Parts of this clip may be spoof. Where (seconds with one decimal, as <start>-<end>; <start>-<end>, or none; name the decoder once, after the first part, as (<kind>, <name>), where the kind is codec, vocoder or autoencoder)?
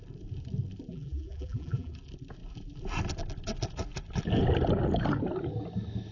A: 0.9-1.9 (vocoder, BigVGAN v2)